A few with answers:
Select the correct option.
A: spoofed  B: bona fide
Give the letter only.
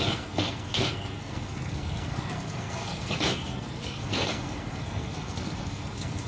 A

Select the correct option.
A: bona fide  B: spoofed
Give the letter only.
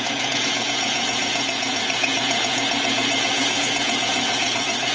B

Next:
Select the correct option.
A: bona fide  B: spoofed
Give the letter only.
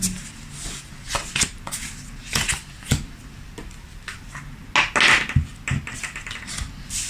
A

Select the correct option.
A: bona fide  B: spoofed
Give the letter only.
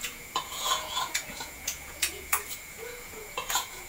B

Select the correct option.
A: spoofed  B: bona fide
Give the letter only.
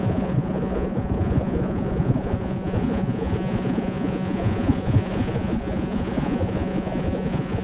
A